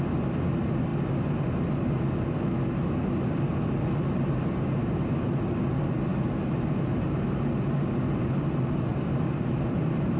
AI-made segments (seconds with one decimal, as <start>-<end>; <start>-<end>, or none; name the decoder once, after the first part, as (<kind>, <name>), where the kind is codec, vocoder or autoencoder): 8.9-10.2 (vocoder, BigVGAN v2)